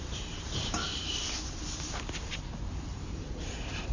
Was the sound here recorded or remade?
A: remade